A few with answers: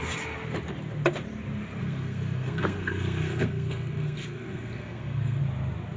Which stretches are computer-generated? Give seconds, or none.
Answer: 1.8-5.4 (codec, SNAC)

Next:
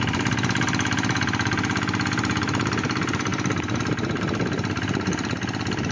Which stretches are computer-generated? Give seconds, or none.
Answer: none